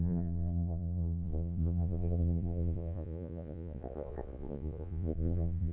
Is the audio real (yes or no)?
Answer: no